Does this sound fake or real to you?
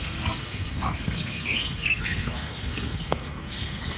fake